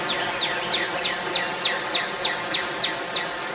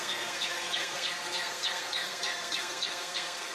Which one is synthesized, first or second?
second